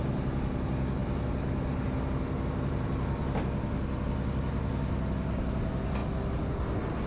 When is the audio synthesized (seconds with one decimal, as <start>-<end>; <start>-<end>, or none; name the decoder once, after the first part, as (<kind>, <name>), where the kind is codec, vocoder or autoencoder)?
1.0-3.4 (vocoder, BigVGAN v2)